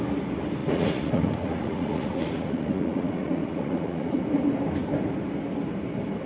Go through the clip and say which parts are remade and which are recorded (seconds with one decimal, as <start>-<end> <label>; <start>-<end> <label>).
0.0-0.6 recorded; 0.6-4.2 remade; 4.2-6.3 recorded